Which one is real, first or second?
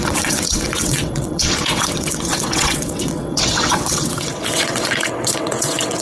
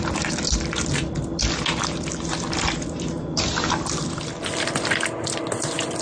second